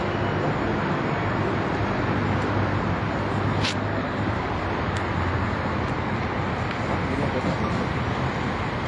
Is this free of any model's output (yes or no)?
yes